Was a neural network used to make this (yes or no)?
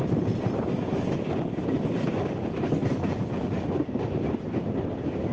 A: no